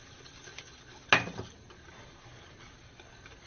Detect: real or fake real